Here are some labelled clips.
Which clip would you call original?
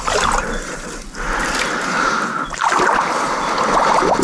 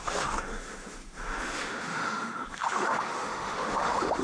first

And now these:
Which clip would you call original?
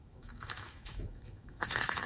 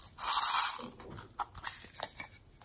second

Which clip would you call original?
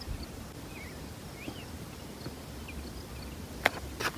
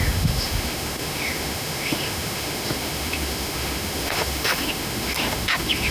first